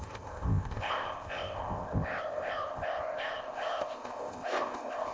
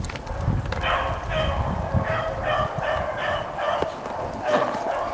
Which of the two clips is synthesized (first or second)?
first